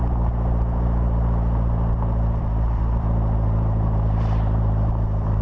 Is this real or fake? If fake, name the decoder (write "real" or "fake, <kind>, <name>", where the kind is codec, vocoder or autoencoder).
fake, vocoder, BigVGAN v2